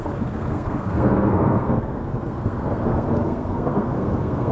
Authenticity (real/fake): fake